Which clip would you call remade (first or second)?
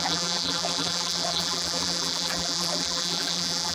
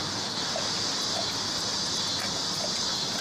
first